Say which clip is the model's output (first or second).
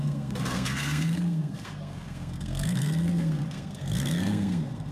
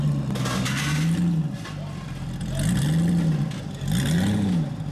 first